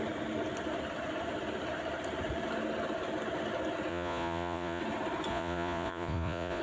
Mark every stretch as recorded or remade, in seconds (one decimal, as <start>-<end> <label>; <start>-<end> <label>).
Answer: 0.0-3.9 recorded; 3.9-4.8 remade; 4.8-5.3 recorded; 5.3-6.6 remade